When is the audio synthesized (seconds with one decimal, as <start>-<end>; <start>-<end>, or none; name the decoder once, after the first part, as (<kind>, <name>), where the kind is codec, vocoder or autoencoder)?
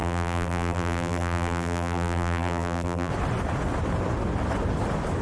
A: 0.0-3.1 (vocoder, BigVGAN v2)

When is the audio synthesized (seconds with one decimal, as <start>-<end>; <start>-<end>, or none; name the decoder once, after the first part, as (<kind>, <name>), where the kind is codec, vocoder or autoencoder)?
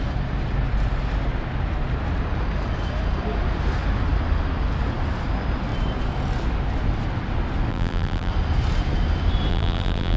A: 7.7-8.3 (vocoder, BigVGAN v2); 9.5-10.2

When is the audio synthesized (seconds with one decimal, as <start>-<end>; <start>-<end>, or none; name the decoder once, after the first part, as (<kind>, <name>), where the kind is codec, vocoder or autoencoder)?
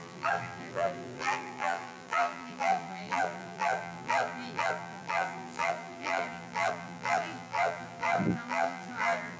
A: 0.0-9.4 (vocoder, BigVGAN v2)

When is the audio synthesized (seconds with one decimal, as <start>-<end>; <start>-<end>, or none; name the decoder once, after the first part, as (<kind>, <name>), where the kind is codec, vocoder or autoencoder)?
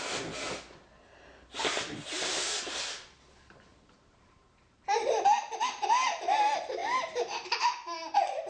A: 3.7-5.9 (vocoder, BigVGAN v2); 6.8-7.7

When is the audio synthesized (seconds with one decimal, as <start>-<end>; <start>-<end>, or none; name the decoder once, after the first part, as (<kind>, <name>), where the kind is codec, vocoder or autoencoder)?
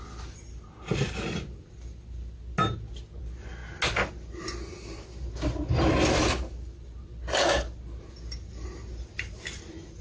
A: none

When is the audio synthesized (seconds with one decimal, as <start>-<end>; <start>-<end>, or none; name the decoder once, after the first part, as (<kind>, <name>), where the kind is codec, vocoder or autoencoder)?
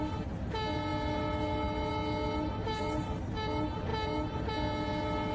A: none